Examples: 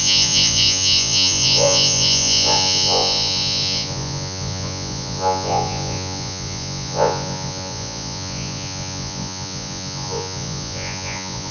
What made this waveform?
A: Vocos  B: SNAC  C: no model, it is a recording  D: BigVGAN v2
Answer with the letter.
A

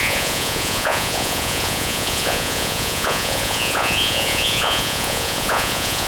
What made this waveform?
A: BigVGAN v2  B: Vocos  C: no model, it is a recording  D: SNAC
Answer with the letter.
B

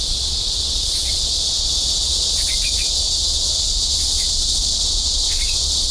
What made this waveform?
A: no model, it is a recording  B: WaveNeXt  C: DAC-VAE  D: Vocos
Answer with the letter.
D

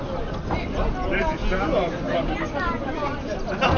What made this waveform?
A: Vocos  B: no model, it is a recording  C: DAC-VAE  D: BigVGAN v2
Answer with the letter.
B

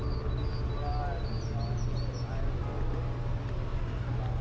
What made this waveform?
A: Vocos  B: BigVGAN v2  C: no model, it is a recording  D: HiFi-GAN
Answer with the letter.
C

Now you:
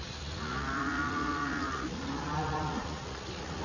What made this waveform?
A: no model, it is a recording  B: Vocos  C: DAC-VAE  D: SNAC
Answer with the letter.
B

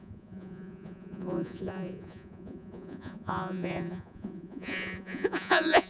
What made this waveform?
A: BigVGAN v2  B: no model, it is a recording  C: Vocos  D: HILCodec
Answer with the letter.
C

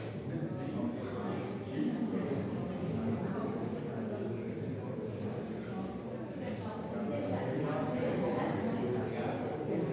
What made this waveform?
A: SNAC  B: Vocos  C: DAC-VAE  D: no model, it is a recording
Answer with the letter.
D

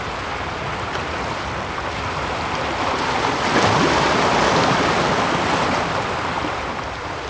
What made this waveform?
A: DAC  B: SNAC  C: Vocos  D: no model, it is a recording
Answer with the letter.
D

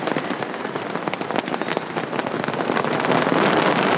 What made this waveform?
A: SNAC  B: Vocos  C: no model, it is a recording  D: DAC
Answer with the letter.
C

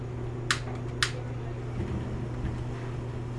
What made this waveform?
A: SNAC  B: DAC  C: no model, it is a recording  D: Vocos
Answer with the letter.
C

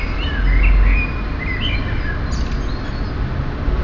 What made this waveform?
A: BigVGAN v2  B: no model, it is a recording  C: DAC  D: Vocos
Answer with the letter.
B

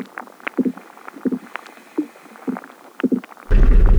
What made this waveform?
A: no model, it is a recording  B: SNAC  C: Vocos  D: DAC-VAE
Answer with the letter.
A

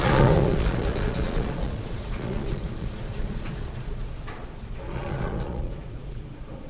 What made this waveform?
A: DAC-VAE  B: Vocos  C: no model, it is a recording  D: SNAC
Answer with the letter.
B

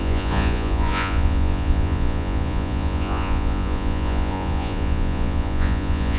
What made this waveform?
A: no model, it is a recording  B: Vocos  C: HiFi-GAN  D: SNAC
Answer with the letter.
B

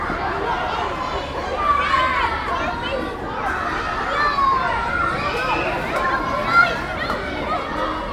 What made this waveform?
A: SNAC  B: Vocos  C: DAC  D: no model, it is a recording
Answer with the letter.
D